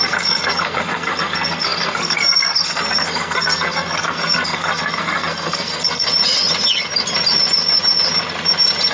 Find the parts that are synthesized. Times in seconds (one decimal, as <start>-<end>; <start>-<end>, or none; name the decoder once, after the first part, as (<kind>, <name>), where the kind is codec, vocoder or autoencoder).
0.0-6.1 (codec, SNAC)